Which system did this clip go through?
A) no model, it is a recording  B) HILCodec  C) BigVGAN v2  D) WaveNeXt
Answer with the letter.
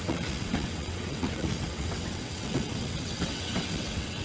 D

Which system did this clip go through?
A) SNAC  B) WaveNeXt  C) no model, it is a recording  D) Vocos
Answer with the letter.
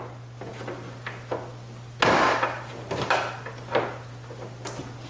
C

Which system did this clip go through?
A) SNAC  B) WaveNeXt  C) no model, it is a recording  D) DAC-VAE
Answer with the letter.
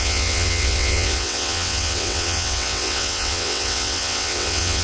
B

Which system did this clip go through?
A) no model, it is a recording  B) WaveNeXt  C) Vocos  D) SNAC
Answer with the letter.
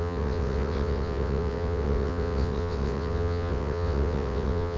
B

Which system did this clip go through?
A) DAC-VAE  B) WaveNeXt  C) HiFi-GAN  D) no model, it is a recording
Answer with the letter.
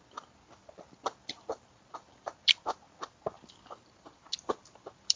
D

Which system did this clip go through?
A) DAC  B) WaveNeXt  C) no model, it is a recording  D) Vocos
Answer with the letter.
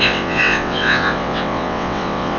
B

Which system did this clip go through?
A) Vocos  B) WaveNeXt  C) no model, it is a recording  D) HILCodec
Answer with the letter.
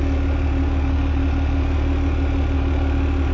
C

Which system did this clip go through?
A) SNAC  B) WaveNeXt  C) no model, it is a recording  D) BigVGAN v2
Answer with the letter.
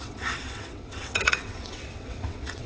B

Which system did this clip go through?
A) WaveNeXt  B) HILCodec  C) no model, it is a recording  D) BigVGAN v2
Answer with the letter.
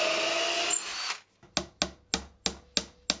C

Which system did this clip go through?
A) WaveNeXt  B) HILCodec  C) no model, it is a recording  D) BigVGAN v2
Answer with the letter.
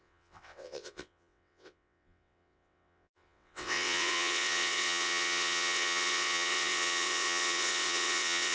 A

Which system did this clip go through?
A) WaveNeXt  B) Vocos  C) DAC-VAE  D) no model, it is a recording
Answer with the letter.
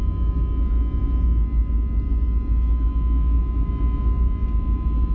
D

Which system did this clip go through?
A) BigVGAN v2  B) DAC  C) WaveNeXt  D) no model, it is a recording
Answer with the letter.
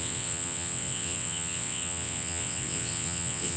C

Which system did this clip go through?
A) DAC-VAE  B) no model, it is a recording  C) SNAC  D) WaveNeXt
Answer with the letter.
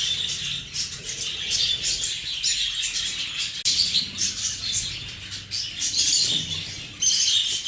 B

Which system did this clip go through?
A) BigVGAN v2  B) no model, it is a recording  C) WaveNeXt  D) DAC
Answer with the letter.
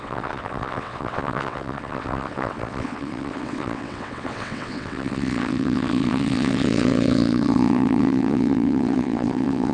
C